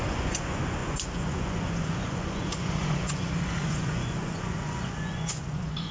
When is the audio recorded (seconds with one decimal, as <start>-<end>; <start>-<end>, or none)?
none